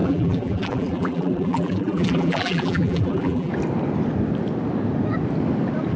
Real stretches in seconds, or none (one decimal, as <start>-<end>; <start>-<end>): 3.5-6.0